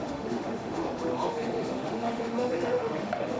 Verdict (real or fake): fake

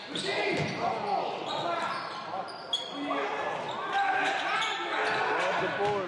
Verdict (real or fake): real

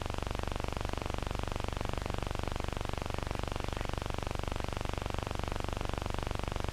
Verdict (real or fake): real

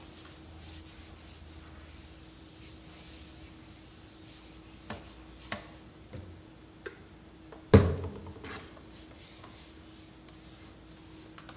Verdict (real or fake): real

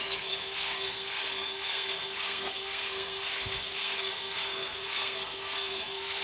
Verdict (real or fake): fake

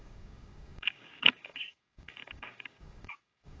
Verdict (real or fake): fake